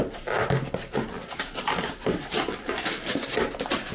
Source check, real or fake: real